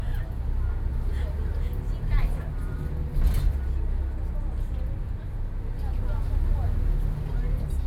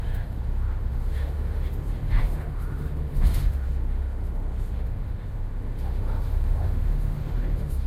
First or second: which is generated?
second